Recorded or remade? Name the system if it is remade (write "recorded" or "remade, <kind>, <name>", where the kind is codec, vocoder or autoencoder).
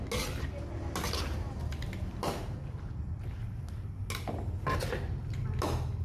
recorded